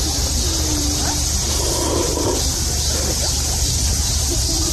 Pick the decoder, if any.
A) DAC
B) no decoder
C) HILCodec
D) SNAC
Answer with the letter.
B